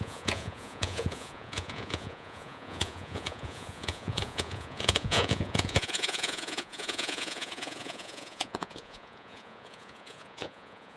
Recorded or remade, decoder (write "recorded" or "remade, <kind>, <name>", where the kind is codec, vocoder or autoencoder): remade, vocoder, Vocos